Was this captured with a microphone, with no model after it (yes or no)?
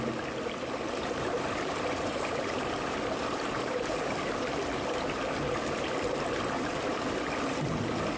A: no